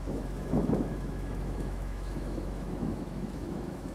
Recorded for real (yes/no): no